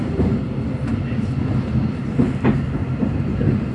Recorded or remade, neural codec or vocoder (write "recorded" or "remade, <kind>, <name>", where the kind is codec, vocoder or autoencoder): recorded